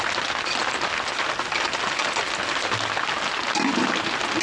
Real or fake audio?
real